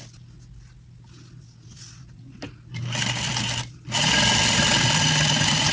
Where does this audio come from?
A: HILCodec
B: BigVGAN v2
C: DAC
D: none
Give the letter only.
D